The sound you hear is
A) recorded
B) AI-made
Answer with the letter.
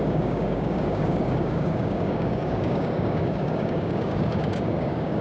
B